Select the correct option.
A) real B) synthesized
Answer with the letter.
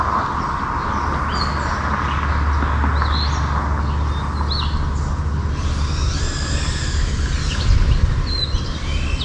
A